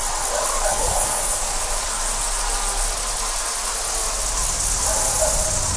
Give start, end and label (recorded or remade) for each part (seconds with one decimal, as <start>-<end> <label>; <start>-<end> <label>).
0.0-0.7 recorded; 0.7-2.0 remade; 2.0-5.8 recorded